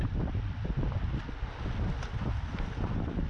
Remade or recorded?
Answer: recorded